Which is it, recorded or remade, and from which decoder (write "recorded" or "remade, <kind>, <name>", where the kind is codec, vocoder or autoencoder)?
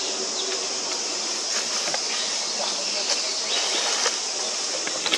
recorded